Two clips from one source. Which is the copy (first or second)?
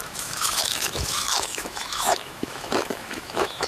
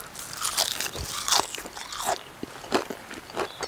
first